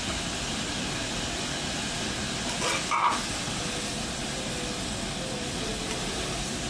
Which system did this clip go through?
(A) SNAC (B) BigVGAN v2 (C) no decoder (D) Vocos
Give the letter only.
C